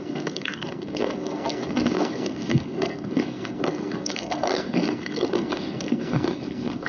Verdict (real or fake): fake